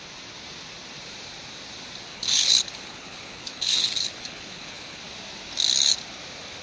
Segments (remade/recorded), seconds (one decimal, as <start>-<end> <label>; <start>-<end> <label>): 0.0-2.1 recorded; 2.1-5.0 remade; 5.0-6.6 recorded